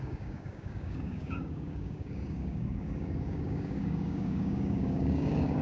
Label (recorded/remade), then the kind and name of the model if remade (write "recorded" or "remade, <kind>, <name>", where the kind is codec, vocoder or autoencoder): remade, codec, DAC